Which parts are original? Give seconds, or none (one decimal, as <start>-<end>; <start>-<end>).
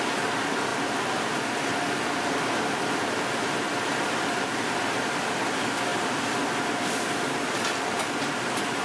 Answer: 0.0-8.8